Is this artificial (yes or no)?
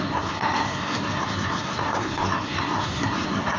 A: yes